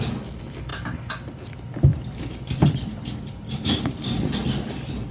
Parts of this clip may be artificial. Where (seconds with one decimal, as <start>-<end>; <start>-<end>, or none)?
1.9-5.1